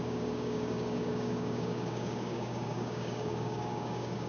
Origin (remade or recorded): remade